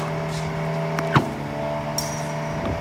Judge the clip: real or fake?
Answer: real